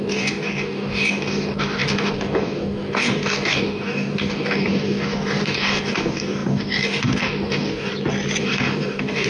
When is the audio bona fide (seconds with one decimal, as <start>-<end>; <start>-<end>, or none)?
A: 7.9-8.4